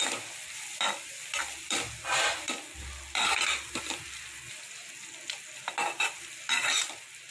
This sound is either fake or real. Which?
real